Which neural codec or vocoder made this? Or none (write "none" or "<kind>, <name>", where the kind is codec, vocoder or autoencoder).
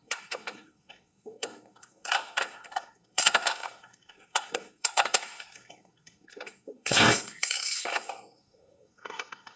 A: codec, SNAC